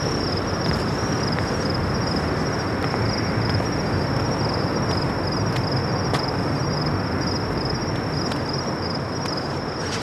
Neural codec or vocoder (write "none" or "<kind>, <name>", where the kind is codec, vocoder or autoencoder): none